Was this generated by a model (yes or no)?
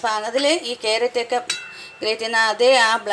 no